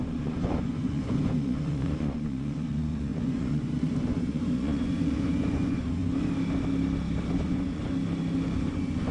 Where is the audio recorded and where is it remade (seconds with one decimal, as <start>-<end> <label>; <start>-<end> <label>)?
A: 0.0-6.0 remade; 6.0-7.3 recorded; 7.3-7.8 remade; 7.8-8.7 recorded; 8.7-9.1 remade